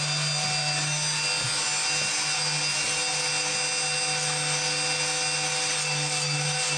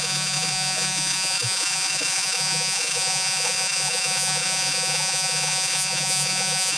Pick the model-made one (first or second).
second